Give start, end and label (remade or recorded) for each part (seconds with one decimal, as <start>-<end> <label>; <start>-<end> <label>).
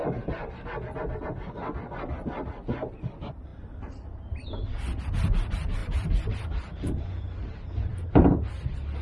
0.0-5.8 recorded; 5.8-8.5 remade; 8.5-9.0 recorded